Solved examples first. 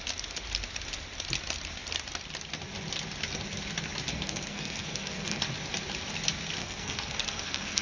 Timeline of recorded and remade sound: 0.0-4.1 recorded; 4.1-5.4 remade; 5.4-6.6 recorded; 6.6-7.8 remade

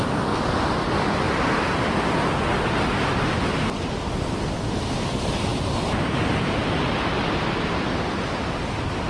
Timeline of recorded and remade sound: 0.0-9.1 recorded